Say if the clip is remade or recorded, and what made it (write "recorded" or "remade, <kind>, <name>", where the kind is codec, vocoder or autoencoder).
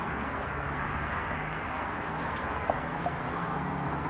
remade, codec, SNAC